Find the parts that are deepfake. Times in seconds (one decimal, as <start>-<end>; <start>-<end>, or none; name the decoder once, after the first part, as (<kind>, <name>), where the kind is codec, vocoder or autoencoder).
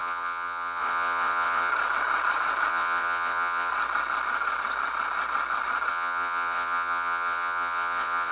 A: 0.0-1.7 (vocoder, Vocos); 2.7-3.7; 5.9-8.3